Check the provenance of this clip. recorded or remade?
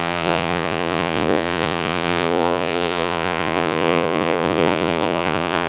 remade